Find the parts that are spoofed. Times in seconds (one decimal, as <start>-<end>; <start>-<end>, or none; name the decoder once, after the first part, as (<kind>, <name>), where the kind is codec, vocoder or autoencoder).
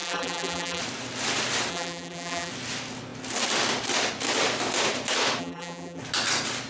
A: 0.0-0.8 (vocoder, BigVGAN v2); 1.7-2.5; 5.4-6.0